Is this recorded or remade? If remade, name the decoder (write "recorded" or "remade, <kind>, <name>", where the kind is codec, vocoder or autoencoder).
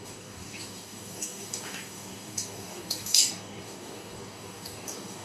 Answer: remade, codec, DAC